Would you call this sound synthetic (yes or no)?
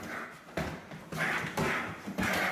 no